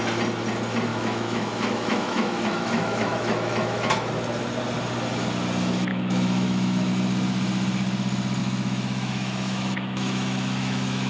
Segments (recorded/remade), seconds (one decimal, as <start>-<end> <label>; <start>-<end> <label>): 0.0-0.9 recorded; 0.9-4.1 remade; 4.1-5.9 recorded; 5.9-6.9 remade; 6.9-8.4 recorded; 8.4-11.1 remade